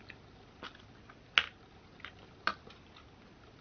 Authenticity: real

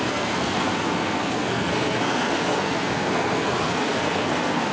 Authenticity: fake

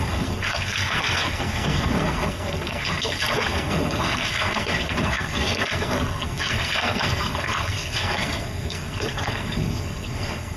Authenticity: fake